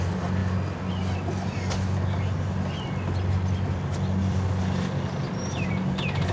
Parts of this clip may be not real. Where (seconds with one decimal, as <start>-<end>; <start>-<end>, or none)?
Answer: 4.2-6.3